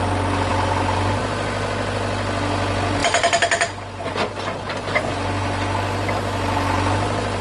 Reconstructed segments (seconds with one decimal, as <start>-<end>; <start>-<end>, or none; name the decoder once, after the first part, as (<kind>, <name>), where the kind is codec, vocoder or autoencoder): none